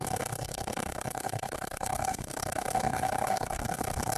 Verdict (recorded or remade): remade